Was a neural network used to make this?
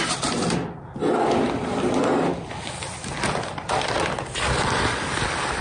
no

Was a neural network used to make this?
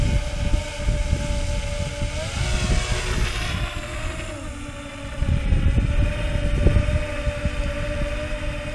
no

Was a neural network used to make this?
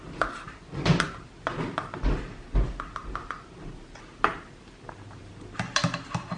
no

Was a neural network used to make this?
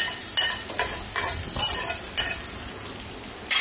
no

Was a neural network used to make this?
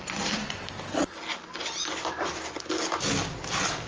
no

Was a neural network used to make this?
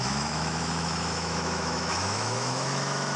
yes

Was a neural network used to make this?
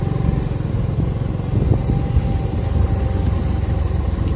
no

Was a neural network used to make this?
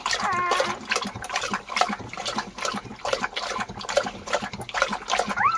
no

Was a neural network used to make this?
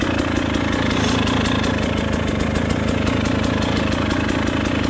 no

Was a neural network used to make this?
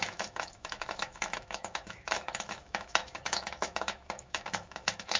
yes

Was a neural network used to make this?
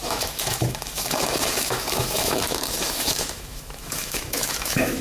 yes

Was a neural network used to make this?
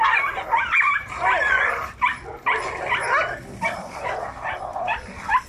no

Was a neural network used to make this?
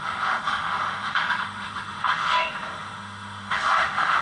yes